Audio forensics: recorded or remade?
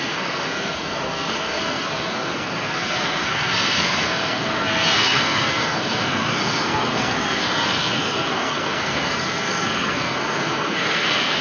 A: remade